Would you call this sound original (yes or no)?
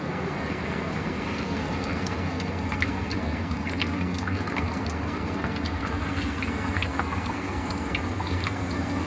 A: no